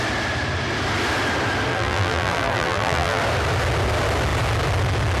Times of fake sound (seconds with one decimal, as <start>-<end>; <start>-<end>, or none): 1.7-3.2

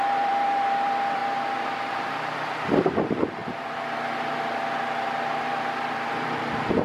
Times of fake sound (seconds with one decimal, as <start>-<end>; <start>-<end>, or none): 0.0-1.2; 1.9-3.4; 5.4-6.8

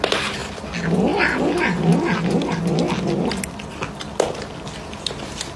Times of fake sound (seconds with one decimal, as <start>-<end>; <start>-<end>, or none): none